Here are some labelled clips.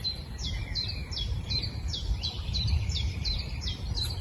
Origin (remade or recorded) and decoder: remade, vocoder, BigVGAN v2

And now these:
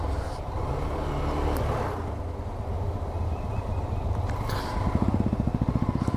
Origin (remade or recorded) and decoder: recorded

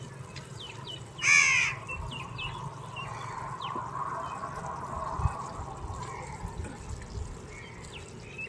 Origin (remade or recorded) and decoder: recorded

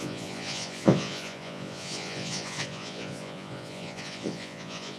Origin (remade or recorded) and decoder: remade, vocoder, Vocos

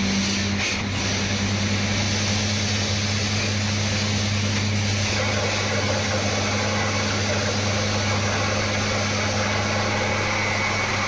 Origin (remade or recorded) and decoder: recorded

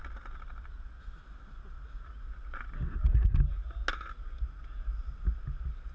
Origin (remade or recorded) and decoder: recorded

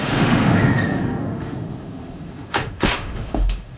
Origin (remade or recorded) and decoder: remade, autoencoder, DAC-VAE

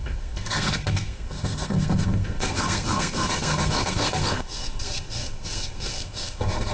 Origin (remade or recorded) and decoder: remade, codec, SNAC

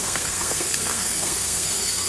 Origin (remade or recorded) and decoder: remade, codec, SNAC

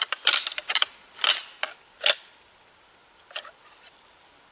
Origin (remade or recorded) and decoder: remade, vocoder, BigVGAN v2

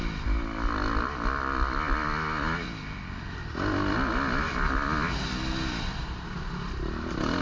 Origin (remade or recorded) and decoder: recorded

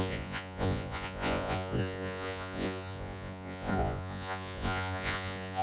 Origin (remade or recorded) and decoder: remade, vocoder, Vocos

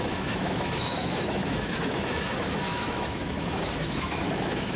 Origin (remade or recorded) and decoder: remade, autoencoder, DAC-VAE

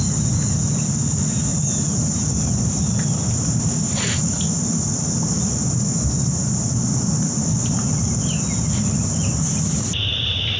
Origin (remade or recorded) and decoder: recorded